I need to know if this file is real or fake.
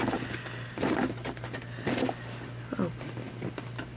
real